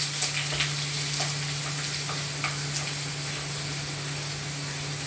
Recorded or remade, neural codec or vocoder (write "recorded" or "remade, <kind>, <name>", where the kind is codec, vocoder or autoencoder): recorded